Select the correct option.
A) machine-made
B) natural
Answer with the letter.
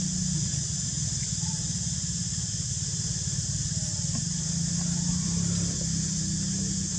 B